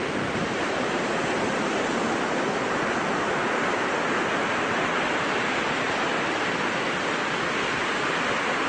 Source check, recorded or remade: recorded